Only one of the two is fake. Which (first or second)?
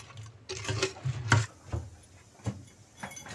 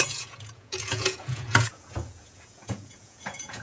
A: second